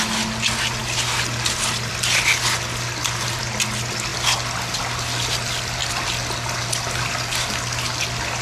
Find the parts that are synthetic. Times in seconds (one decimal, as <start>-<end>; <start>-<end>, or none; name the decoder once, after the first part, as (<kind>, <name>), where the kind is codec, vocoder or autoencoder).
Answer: none